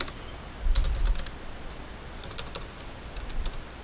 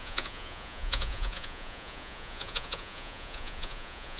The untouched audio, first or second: first